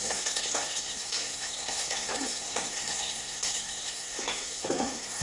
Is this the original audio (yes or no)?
no